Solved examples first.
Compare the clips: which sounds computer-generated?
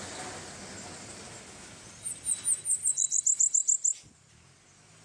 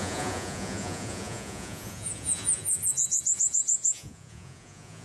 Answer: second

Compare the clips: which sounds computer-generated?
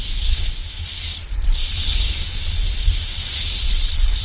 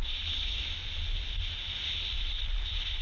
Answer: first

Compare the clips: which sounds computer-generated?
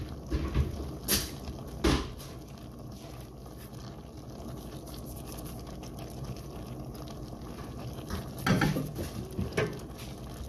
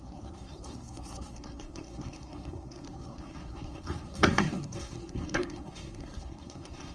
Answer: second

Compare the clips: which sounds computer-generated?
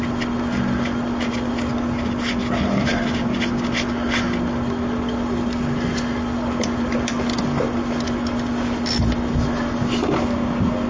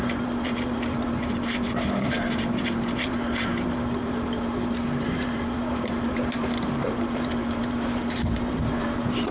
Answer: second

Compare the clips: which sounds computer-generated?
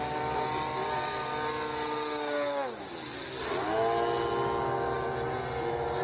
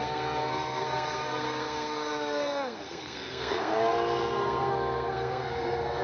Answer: second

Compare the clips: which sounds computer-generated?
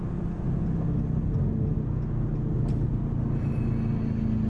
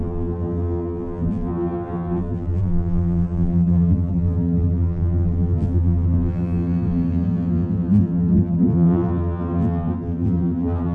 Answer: second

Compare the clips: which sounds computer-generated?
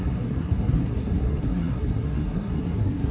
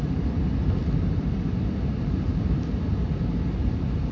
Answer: first